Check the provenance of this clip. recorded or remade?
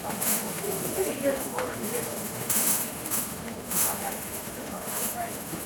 remade